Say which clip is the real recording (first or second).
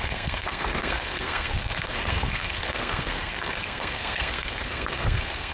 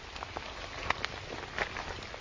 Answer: second